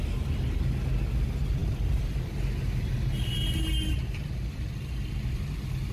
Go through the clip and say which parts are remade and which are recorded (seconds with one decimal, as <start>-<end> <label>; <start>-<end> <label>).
0.0-5.9 recorded

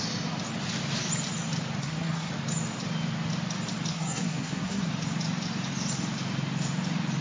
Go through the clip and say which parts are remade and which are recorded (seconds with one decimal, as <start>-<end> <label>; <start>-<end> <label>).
0.0-1.8 recorded; 1.8-2.3 remade; 2.3-3.9 recorded; 3.9-4.9 remade; 4.9-7.2 recorded

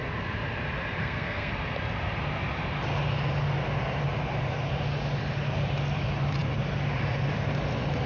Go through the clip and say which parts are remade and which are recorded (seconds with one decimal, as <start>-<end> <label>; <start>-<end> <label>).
0.0-1.0 recorded; 1.0-1.5 remade; 1.5-8.1 recorded

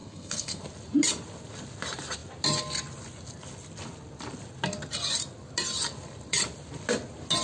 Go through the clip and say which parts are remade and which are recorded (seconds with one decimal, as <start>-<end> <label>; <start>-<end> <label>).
0.0-0.6 remade; 0.6-7.4 recorded

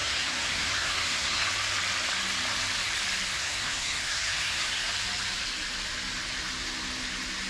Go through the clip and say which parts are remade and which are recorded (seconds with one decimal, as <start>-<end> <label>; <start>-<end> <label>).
0.0-1.5 remade; 1.5-3.3 recorded; 3.3-4.9 remade; 4.9-7.5 recorded